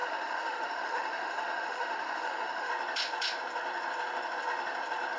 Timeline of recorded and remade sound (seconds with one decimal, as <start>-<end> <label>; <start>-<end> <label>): 0.0-2.7 remade; 2.7-5.2 recorded